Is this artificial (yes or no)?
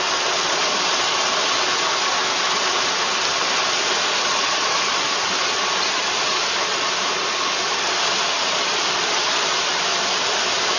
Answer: no